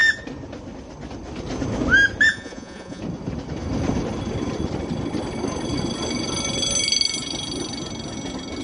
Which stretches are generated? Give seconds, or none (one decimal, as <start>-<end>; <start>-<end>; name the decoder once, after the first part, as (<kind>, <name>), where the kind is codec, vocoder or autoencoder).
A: 2.3-3.0 (vocoder, Vocos)